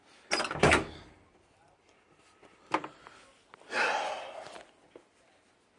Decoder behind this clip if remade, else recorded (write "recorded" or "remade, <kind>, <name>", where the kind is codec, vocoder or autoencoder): recorded